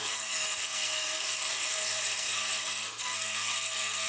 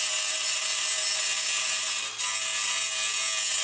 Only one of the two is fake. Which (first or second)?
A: first